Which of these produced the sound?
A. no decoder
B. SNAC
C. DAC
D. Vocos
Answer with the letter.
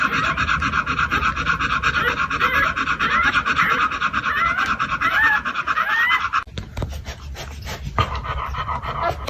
A